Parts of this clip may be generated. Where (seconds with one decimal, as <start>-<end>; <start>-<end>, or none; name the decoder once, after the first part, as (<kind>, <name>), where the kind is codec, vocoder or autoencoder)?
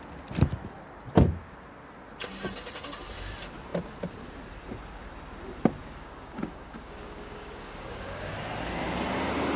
5.8-8.3 (codec, DAC)